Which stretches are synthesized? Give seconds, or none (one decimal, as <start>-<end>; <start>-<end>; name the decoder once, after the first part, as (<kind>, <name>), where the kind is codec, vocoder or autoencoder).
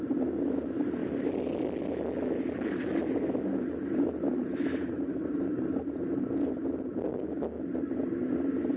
4.4-5.8 (vocoder, BigVGAN v2)